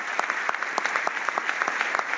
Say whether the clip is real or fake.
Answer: real